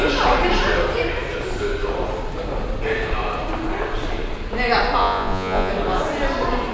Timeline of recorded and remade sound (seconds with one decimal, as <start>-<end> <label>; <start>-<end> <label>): 0.0-5.0 recorded; 5.0-5.7 remade; 5.7-6.7 recorded